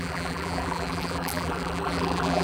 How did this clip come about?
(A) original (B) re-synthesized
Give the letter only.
B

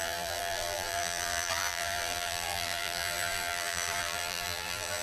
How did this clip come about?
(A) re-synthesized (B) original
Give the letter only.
A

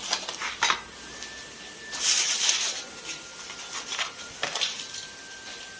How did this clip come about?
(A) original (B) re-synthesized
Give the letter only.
B